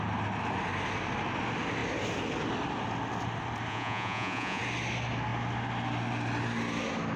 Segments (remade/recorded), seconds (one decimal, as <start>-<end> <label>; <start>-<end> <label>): 0.0-3.7 recorded; 3.7-4.6 remade; 4.6-7.2 recorded